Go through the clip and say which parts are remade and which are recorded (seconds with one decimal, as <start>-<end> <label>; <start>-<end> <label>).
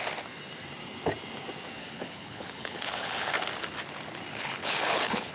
0.0-1.8 recorded; 1.8-3.3 remade; 3.3-4.3 recorded; 4.3-5.3 remade